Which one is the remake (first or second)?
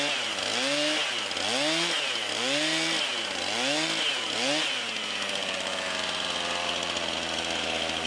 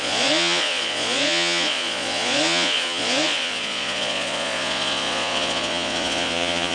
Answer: second